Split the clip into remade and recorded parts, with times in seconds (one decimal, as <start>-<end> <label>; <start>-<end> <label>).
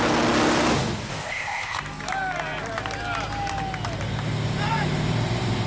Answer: 0.0-1.1 recorded; 1.1-1.8 remade; 1.8-5.7 recorded